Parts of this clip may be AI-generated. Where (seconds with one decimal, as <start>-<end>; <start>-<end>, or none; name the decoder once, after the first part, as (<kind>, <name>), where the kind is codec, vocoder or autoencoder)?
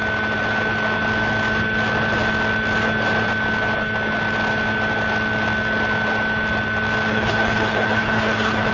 7.1-8.7 (codec, HILCodec)